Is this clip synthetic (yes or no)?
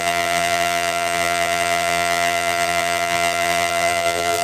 yes